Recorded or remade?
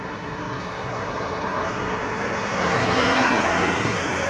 remade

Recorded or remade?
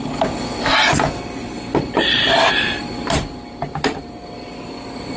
recorded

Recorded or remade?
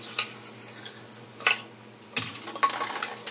recorded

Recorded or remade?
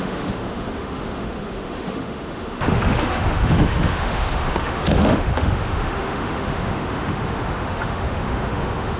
remade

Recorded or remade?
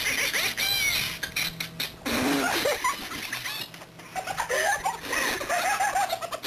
recorded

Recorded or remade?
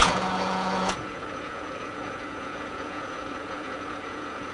remade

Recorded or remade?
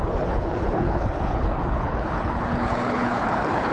remade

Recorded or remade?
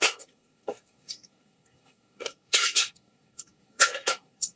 remade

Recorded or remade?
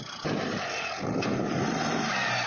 recorded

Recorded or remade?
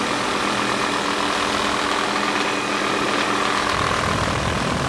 recorded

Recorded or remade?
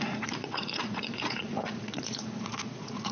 remade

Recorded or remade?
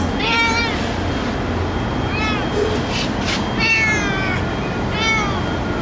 recorded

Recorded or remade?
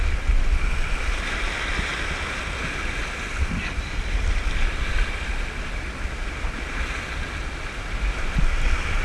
recorded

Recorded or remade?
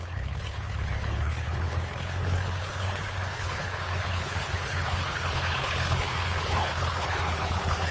remade